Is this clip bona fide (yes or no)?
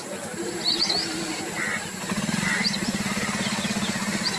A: yes